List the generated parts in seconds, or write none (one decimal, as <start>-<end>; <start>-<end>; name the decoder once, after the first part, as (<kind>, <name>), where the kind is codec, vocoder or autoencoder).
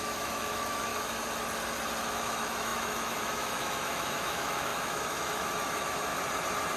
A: 0.0-0.9 (autoencoder, DAC-VAE); 2.0-6.1